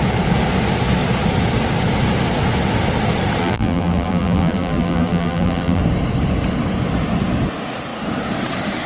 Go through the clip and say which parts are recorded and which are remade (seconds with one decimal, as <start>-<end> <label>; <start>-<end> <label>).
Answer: 0.0-3.4 recorded; 3.4-5.8 remade; 5.8-8.9 recorded